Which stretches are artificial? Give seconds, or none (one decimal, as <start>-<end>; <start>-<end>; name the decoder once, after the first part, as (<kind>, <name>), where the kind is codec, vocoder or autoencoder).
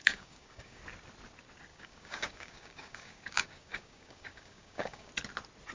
0.0-0.8 (codec, DAC); 1.7-5.1